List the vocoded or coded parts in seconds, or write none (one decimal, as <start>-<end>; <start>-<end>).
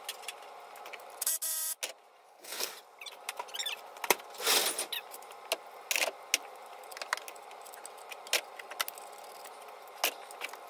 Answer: 2.2-2.7